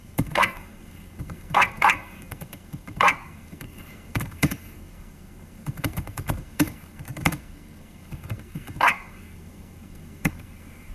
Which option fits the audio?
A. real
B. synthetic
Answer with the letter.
B